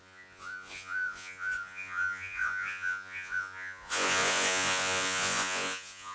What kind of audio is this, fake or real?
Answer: fake